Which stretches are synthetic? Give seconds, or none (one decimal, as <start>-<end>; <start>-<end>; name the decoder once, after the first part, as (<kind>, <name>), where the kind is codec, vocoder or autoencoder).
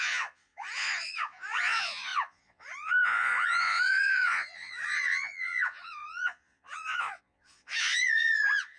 0.0-8.8 (vocoder, Vocos)